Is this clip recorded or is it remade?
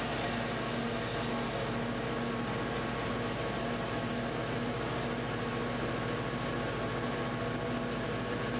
recorded